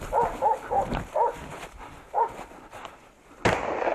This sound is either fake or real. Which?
real